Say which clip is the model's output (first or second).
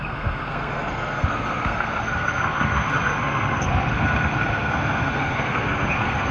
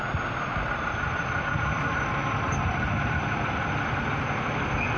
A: first